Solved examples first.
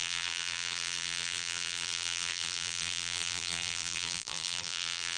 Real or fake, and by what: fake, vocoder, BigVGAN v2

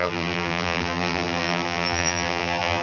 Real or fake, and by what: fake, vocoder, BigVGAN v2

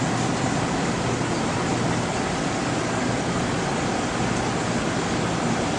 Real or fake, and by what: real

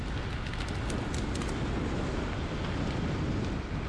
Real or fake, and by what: real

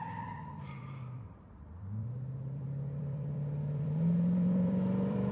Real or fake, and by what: fake, vocoder, BigVGAN v2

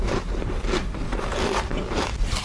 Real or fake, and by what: fake, vocoder, BigVGAN v2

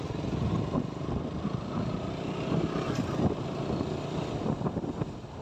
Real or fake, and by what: real